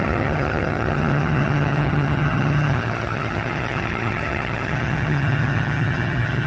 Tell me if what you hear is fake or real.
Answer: fake